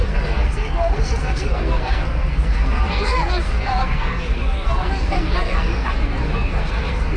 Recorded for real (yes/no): no